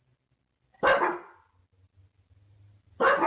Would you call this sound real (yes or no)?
yes